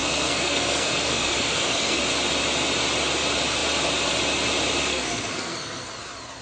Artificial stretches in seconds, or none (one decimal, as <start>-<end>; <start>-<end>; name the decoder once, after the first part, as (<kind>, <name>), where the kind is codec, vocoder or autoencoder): 0.0-2.0 (codec, SNAC); 4.9-5.9

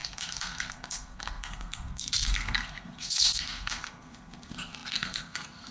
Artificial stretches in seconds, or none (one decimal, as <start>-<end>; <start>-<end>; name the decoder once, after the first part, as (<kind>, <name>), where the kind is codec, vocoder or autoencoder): 0.0-5.7 (codec, SNAC)

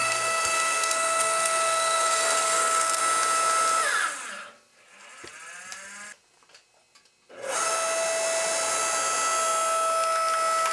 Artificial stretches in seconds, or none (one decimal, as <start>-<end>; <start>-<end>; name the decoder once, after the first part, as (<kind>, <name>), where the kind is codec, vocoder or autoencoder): 0.0-3.0 (codec, SNAC)

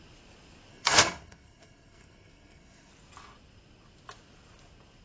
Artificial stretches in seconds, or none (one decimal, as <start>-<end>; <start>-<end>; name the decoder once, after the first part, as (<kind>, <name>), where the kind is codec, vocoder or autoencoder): 0.7-2.9 (codec, SNAC)

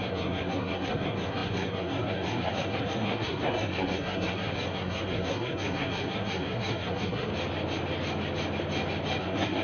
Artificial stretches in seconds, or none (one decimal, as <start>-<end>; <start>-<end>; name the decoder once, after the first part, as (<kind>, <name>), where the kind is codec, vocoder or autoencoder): 0.0-7.3 (codec, SNAC); 9.2-9.6

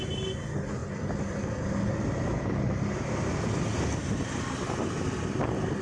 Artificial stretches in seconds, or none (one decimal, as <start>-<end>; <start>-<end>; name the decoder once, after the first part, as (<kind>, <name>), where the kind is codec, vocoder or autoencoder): none

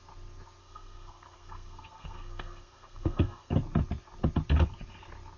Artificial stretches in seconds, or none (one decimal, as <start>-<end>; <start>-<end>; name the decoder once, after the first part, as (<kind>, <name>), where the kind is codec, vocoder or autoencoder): 0.6-3.5 (codec, SNAC)